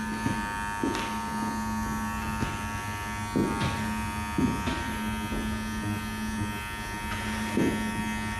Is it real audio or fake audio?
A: real